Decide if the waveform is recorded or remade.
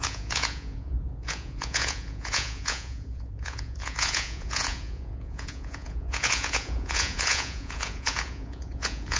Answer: remade